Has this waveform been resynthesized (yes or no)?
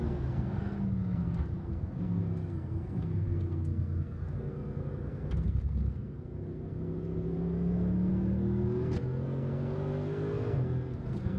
yes